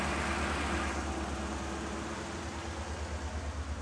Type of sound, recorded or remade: recorded